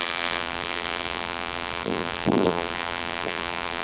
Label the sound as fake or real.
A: fake